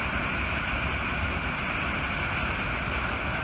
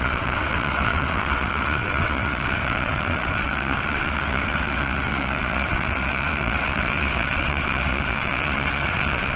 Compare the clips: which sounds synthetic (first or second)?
second